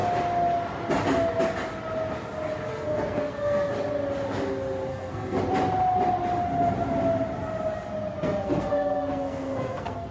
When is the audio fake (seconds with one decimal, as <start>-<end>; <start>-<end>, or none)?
2.7-3.7; 4.9-5.4; 8.1-10.1